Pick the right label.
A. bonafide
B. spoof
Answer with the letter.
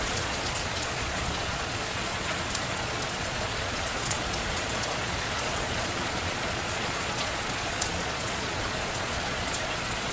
B